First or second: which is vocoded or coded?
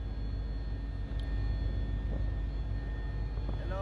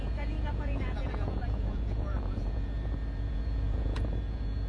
second